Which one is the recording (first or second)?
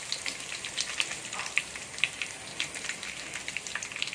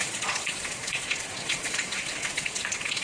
first